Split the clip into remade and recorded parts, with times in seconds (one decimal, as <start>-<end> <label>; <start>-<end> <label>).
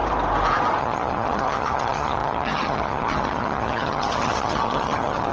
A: 0.0-0.8 recorded; 0.8-5.3 remade